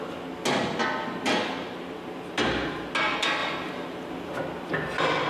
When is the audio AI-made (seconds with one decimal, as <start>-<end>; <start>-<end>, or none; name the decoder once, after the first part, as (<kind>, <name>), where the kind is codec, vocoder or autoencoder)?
none